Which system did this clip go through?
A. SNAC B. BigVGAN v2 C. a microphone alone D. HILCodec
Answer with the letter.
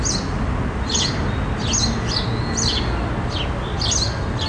C